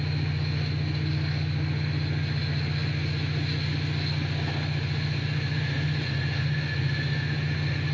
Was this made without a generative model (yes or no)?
yes